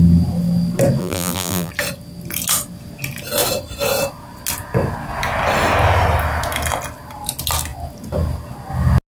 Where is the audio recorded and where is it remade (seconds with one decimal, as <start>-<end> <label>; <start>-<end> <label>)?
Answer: 0.0-1.0 recorded; 1.0-1.7 remade; 1.7-9.1 recorded